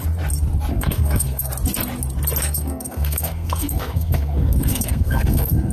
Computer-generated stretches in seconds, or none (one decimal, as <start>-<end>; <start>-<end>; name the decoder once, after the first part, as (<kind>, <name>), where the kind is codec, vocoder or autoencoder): 0.7-1.5 (codec, SNAC); 2.4-5.7